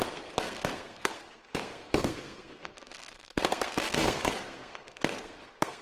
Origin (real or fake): fake